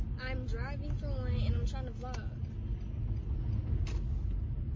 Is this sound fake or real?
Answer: real